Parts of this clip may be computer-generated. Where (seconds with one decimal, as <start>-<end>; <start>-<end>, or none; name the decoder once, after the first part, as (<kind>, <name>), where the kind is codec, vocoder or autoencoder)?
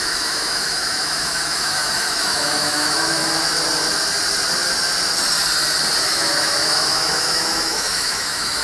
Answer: 0.0-3.2 (autoencoder, DAC-VAE); 6.0-8.6